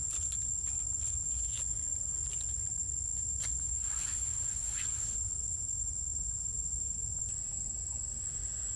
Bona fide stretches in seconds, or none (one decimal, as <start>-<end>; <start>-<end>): 0.0-8.8